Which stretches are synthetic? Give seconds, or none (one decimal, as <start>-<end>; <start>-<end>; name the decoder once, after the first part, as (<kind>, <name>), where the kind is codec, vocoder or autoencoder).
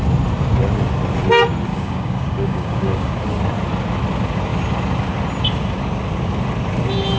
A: 1.7-3.2 (codec, DAC)